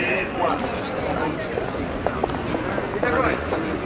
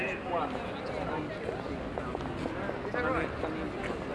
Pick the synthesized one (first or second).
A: first